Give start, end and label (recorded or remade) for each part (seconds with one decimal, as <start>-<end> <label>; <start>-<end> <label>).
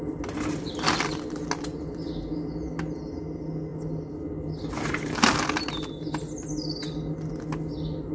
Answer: 0.0-8.1 recorded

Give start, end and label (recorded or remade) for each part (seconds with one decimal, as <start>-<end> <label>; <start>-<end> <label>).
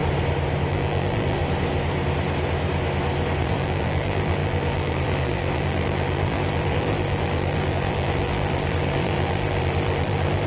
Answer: 0.0-0.7 recorded; 0.7-1.4 remade; 1.4-3.4 recorded; 3.4-10.5 remade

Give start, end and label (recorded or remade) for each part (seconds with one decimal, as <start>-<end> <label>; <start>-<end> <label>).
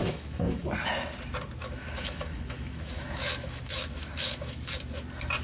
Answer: 0.0-0.7 remade; 0.7-1.6 recorded; 1.6-4.8 remade; 4.8-5.4 recorded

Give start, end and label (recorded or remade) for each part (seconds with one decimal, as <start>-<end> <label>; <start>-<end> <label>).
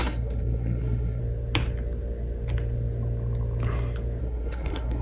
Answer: 0.0-1.2 remade; 1.2-4.2 recorded; 4.2-5.0 remade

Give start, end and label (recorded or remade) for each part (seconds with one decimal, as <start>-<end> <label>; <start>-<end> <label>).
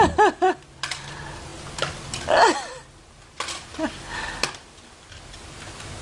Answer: 0.0-6.0 recorded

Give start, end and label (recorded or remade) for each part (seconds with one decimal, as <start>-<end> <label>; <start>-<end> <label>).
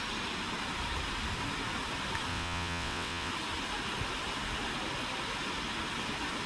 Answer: 0.0-2.3 recorded; 2.3-3.3 remade; 3.3-6.5 recorded